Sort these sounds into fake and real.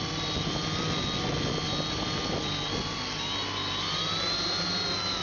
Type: real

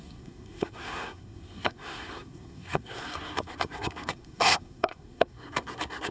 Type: fake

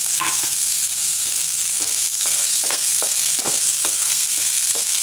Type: fake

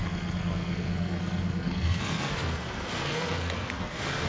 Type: fake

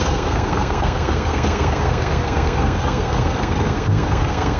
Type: fake